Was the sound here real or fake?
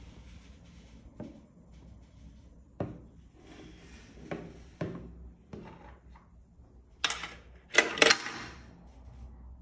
real